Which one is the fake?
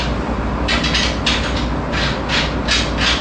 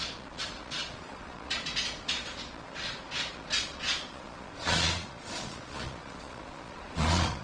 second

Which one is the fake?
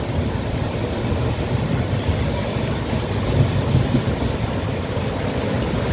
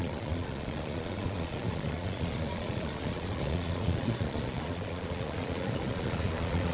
second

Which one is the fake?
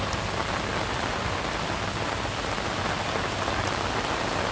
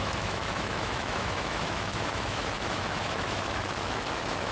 second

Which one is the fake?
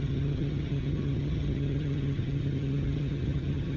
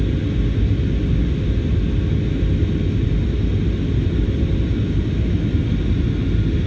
first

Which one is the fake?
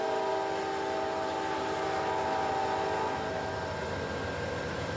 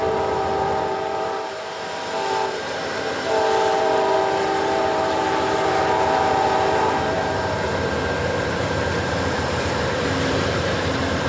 second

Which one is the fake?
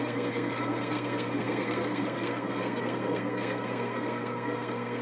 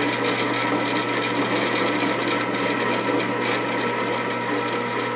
first